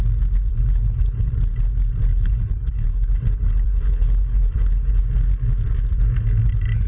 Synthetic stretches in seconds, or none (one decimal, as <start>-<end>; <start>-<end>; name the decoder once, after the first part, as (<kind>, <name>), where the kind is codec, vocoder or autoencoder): 0.5-1.3 (codec, HILCodec); 2.1-5.0